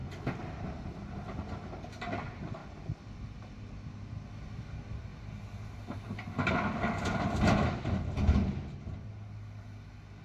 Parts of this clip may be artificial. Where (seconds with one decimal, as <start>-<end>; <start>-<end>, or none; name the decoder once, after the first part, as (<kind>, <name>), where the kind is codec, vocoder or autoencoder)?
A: none

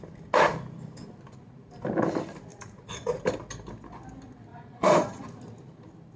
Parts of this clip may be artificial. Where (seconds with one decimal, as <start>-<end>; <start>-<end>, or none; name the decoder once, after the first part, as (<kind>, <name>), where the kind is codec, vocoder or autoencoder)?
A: 2.5-3.2 (vocoder, Vocos); 4.5-5.2

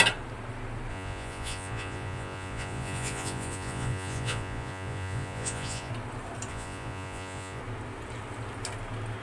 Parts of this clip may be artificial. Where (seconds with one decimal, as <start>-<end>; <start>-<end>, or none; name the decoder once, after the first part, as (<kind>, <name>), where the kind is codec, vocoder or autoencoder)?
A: 0.9-5.9 (vocoder, Vocos); 6.5-7.6

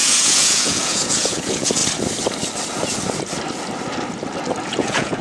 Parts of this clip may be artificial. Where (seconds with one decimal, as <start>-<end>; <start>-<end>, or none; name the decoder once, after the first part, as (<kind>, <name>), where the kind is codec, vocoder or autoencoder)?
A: 0.0-1.8 (vocoder, Vocos); 4.7-5.2

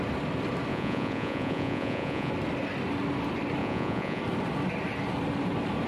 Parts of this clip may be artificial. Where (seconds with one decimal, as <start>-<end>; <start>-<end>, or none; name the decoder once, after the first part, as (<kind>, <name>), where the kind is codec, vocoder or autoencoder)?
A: 0.7-2.3 (vocoder, Vocos); 3.6-4.2

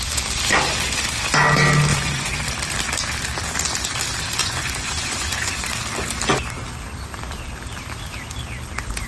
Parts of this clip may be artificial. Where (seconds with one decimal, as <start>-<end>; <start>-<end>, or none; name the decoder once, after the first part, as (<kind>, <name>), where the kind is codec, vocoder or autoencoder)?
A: 1.9-2.4 (vocoder, Vocos); 4.4-5.7

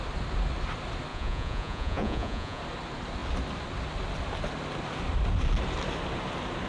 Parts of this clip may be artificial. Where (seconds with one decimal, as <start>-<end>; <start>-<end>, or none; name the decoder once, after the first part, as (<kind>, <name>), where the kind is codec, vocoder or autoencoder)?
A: 1.1-2.6 (vocoder, Vocos)